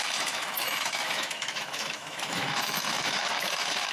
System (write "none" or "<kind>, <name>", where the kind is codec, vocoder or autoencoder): autoencoder, DAC-VAE